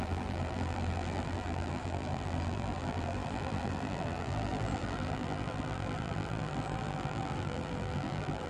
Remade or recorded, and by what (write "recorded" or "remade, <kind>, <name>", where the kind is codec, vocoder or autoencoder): remade, vocoder, BigVGAN v2